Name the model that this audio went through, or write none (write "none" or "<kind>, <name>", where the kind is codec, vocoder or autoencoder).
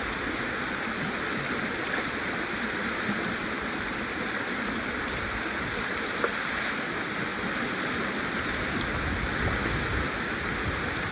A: none